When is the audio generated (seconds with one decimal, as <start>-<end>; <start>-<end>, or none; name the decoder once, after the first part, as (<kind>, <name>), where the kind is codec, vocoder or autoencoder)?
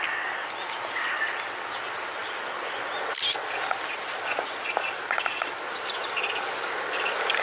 none